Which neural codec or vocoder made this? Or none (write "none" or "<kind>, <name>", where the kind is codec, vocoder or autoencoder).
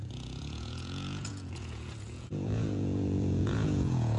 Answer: vocoder, Vocos